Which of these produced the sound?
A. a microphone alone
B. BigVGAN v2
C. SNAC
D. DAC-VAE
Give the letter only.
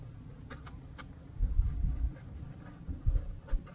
A